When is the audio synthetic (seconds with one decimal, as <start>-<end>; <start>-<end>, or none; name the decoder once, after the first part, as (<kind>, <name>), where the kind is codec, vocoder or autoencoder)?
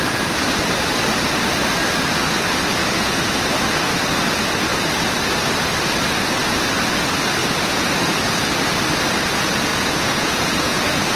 2.8-3.4 (vocoder, Vocos); 7.4-7.9; 9.7-11.2